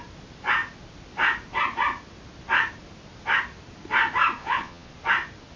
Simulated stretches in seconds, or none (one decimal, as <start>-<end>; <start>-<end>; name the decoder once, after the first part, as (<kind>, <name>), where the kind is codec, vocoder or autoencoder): 4.4-4.9 (vocoder, Vocos)